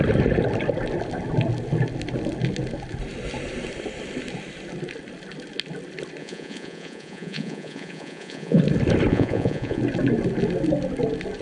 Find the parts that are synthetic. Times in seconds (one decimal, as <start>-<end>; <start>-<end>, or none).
6.2-8.6; 9.1-9.8